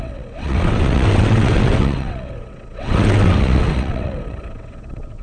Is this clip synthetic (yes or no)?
yes